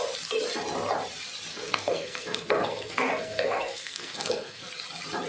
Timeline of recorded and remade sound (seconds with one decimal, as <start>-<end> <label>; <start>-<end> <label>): 0.0-1.5 recorded; 1.5-4.7 remade; 4.7-5.3 recorded